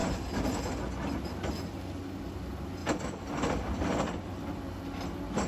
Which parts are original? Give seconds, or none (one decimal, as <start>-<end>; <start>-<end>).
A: 0.0-2.8; 4.8-5.5